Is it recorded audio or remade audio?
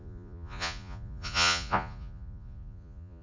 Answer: remade